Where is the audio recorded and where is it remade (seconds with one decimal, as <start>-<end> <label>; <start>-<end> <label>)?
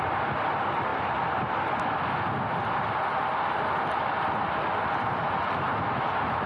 0.0-6.5 recorded